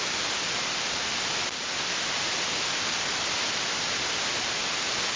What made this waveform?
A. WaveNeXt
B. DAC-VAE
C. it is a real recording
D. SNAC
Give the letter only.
C